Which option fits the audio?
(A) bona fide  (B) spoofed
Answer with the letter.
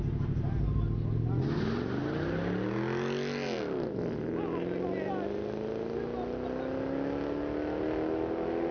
A